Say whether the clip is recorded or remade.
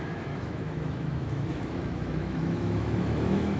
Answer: remade